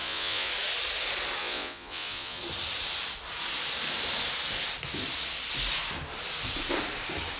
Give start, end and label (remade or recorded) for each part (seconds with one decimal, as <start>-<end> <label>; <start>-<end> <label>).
0.0-0.5 remade; 0.5-1.4 recorded; 1.4-2.4 remade; 2.4-7.4 recorded